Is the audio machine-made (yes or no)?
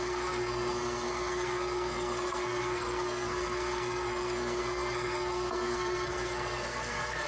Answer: yes